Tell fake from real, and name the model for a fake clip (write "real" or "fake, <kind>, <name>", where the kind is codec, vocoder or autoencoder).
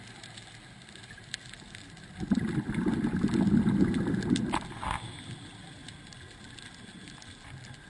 real